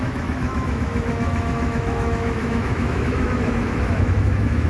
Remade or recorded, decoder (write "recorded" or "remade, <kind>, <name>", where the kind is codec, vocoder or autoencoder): remade, autoencoder, DAC-VAE